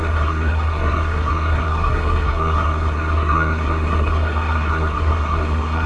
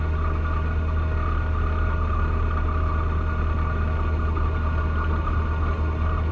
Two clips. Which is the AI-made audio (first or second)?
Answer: first